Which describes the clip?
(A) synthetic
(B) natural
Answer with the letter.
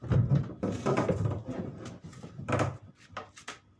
B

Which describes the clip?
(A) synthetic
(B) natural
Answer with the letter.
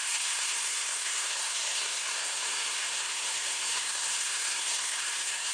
A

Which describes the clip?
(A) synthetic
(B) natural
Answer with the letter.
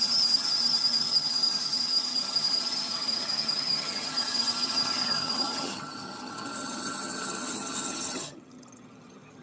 A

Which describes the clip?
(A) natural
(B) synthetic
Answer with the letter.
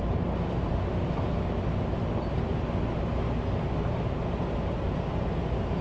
A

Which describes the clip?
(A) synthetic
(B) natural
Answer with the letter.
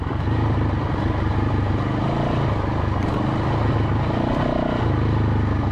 B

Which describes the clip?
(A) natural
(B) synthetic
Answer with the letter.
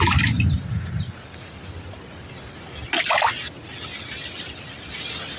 A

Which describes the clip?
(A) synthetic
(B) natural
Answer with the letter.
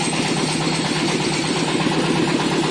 B